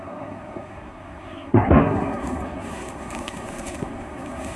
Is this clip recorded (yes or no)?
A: no